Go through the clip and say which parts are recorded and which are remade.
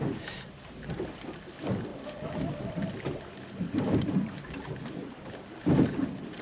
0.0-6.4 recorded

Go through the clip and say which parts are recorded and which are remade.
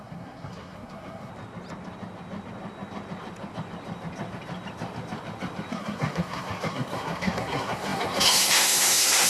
0.0-1.3 remade; 1.3-5.7 recorded; 5.7-9.3 remade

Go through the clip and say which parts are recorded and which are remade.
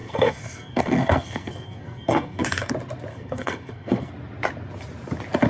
0.0-2.7 remade; 2.7-3.1 recorded; 3.1-4.1 remade; 4.1-5.5 recorded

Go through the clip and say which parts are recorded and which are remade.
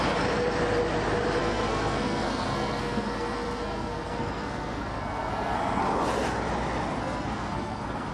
0.0-1.4 recorded; 1.4-5.8 remade; 5.8-7.0 recorded; 7.0-8.1 remade